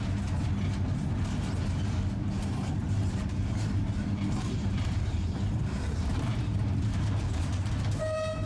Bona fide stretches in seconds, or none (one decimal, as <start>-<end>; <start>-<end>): 0.0-2.8; 7.7-8.5